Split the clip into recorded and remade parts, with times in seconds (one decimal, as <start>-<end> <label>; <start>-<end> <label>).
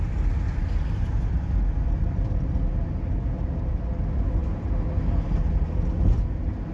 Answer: 0.0-6.7 recorded